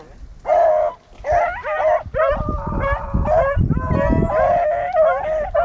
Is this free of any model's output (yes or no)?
yes